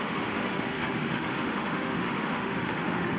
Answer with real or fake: fake